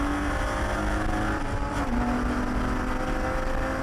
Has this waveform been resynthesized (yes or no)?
no